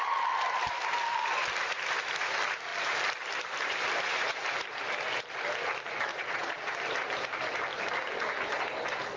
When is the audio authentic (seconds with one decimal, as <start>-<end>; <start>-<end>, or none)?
0.0-6.1; 6.7-9.2